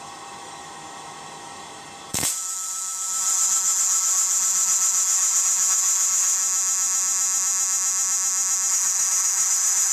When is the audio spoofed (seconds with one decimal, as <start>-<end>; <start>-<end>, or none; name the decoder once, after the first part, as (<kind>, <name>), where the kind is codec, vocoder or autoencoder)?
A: 0.0-6.4 (autoencoder, DAC-VAE); 8.7-9.9